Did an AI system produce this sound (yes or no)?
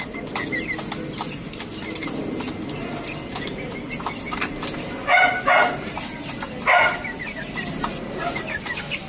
no